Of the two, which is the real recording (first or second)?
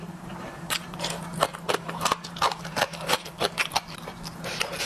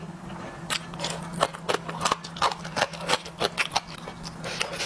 second